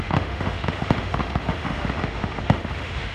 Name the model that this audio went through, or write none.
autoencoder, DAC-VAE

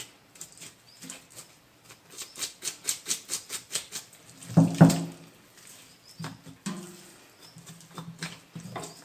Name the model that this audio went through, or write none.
none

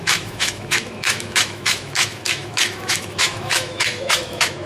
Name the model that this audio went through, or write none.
autoencoder, DAC-VAE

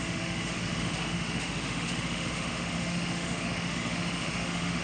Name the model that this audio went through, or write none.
autoencoder, DAC-VAE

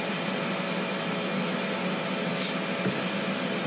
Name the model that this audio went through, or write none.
none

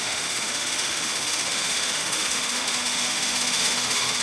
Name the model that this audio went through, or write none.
autoencoder, DAC-VAE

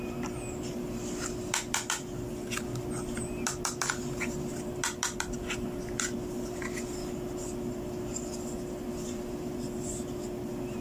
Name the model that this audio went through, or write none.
none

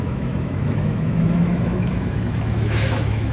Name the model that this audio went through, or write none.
autoencoder, DAC-VAE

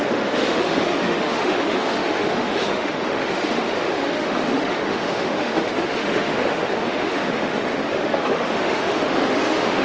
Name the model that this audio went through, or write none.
autoencoder, DAC-VAE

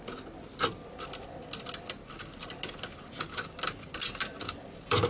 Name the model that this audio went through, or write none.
none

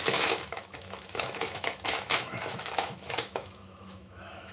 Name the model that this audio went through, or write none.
autoencoder, DAC-VAE